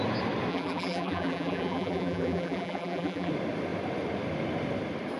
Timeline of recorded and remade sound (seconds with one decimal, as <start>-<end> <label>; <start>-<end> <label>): 0.0-0.5 recorded; 0.5-3.3 remade; 3.3-5.2 recorded